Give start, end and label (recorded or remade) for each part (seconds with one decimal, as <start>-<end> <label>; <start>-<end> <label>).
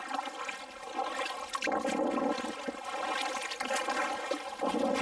0.0-5.0 recorded